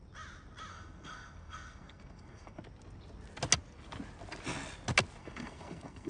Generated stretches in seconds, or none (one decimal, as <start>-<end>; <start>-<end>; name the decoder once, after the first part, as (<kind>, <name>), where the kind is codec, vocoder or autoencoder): 0.7-2.6 (codec, SNAC); 5.2-6.1